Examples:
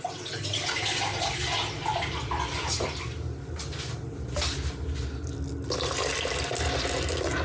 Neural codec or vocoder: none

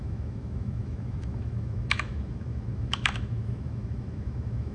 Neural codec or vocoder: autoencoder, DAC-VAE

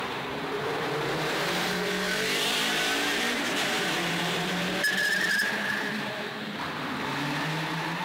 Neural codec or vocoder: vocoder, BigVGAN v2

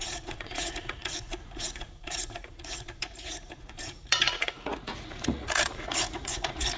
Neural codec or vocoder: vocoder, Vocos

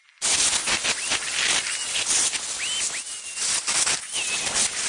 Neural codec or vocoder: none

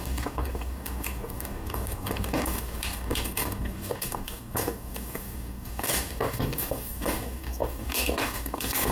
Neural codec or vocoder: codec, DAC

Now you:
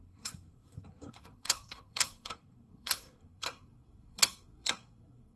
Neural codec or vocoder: codec, SNAC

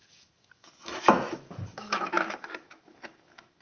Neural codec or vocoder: autoencoder, DAC-VAE